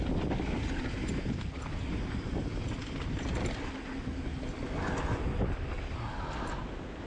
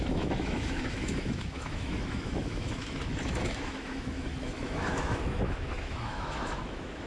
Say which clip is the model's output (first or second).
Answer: second